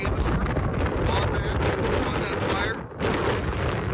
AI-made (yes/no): no